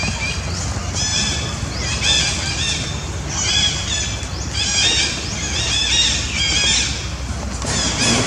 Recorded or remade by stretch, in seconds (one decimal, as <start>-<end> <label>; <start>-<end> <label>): 0.0-8.3 recorded